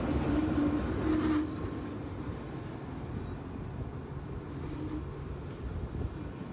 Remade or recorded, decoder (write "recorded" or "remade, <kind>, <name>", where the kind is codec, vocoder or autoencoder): recorded